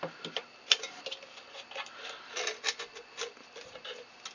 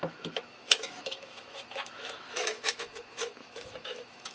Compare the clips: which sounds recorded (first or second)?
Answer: first